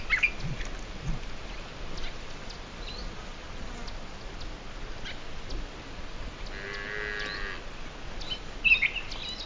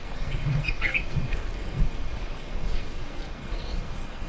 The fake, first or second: second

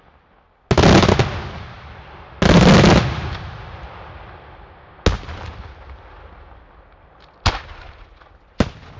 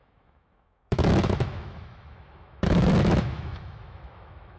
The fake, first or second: second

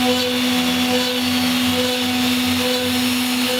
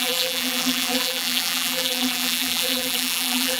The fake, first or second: second